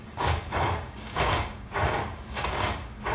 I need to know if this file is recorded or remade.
remade